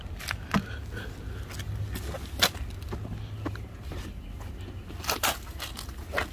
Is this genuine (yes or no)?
yes